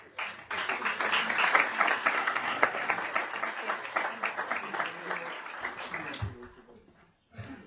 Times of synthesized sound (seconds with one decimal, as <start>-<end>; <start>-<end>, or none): 2.1-2.9